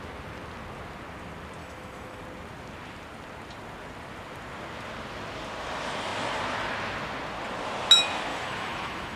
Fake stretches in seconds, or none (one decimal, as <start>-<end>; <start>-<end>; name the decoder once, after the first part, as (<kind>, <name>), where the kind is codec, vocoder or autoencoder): 1.6-2.2 (autoencoder, DAC-VAE); 8.3-9.2